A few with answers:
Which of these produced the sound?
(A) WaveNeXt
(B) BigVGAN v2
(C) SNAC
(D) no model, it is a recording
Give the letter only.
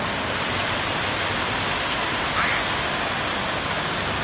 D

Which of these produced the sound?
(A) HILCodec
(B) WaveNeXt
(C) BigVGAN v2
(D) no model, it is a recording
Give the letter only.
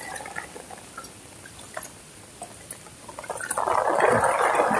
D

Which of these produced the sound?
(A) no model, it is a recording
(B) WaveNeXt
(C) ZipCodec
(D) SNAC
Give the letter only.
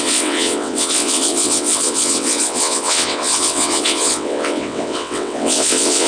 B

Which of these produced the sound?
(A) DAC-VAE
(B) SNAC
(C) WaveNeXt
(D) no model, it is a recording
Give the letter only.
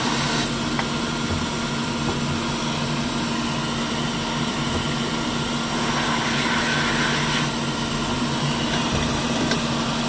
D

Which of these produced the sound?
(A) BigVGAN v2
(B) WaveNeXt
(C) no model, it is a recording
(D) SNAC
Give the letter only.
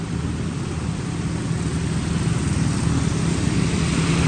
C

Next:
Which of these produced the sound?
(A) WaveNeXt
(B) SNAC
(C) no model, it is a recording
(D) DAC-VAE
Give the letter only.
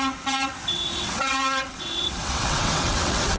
A